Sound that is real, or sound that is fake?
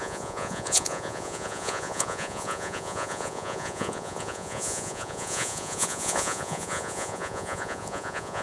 fake